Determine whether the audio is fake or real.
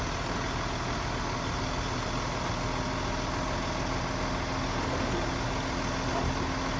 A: real